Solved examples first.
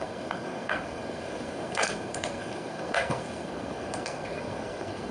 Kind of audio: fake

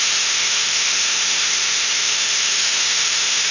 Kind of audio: fake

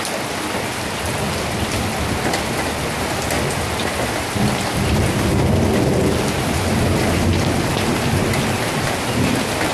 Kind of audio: real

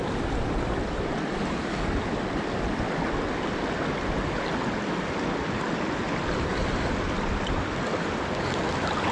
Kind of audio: real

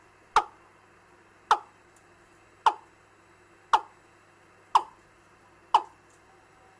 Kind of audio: real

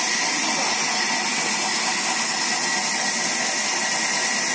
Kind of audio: real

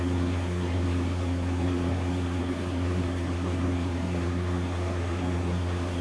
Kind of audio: fake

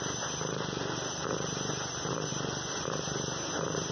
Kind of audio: real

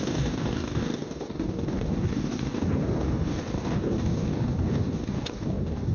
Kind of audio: fake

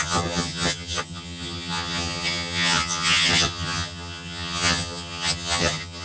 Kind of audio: fake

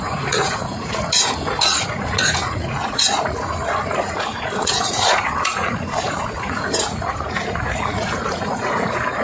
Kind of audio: fake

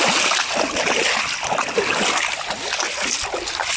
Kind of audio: real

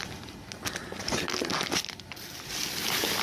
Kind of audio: real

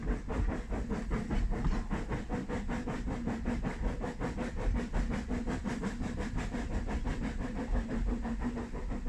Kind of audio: real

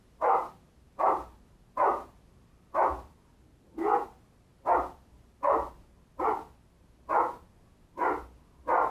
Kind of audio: real